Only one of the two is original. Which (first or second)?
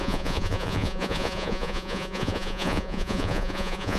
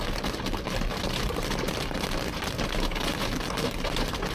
second